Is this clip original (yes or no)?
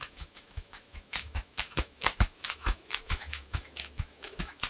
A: no